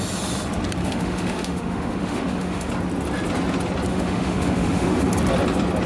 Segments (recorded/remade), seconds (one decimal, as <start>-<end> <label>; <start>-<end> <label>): 0.0-0.8 recorded; 0.8-2.7 remade; 2.7-3.9 recorded; 3.9-5.1 remade; 5.1-5.9 recorded